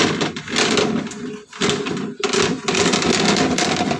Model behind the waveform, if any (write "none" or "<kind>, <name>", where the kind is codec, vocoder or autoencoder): none